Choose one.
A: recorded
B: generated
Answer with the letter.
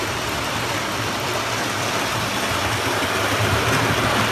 B